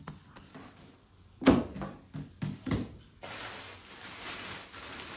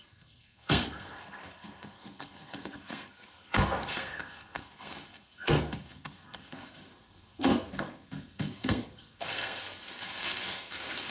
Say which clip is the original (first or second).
first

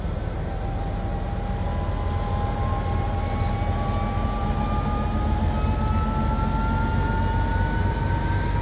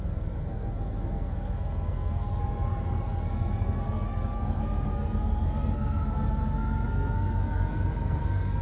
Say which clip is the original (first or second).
first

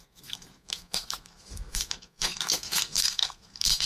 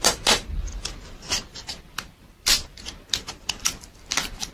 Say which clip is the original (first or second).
second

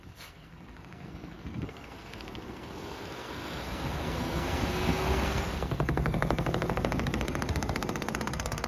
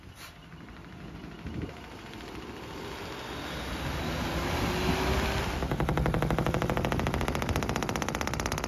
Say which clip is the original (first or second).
second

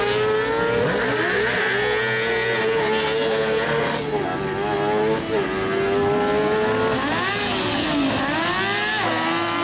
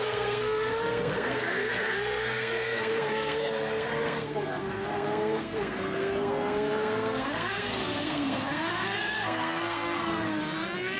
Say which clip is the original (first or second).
first